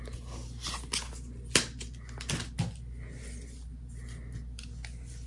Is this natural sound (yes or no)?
yes